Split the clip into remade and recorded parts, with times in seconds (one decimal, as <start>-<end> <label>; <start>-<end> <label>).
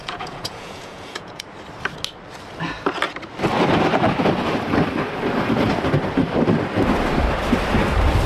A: 0.0-1.4 remade; 1.4-8.3 recorded